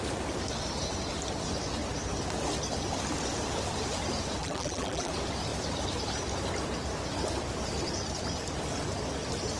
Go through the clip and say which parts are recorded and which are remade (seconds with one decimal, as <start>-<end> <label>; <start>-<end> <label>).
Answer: 0.0-4.4 recorded; 4.4-5.1 remade; 5.1-9.6 recorded